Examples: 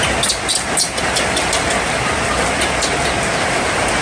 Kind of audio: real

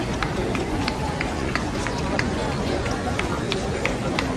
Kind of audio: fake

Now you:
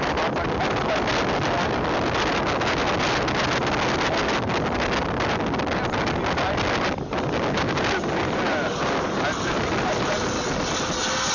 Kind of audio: real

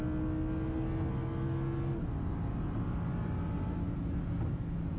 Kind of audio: real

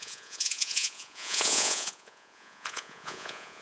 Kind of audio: fake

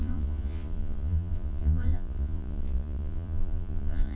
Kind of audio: fake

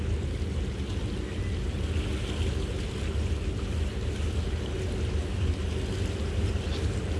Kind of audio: real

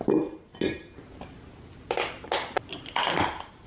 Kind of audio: real